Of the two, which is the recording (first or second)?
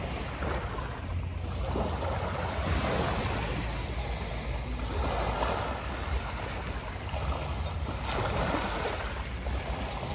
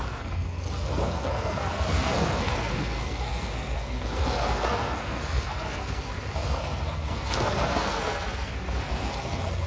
first